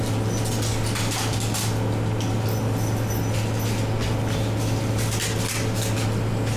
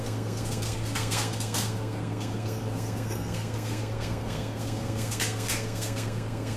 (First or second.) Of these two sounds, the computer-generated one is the second